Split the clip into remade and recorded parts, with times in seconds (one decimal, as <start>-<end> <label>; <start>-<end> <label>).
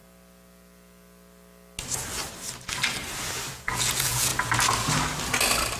0.0-3.5 recorded; 3.5-4.3 remade; 4.3-5.8 recorded